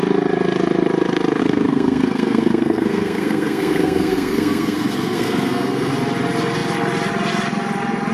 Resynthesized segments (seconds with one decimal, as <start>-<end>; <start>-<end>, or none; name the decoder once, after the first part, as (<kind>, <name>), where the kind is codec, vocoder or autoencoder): 1.4-5.9 (codec, SNAC)